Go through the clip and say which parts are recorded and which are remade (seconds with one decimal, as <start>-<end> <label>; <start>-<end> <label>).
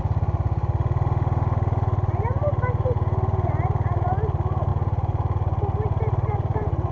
0.0-4.7 recorded; 4.7-6.9 remade